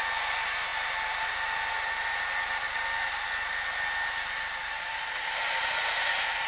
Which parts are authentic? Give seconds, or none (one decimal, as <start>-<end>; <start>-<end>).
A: 0.0-6.5